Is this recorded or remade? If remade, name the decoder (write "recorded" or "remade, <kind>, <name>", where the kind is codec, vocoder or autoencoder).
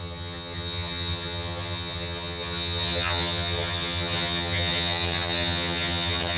remade, vocoder, HiFi-GAN